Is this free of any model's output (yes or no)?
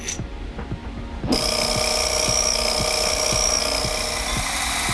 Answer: yes